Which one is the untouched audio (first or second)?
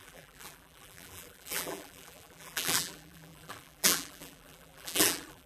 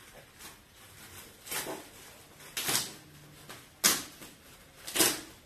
second